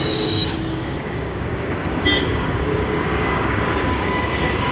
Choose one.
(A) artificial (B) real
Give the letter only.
A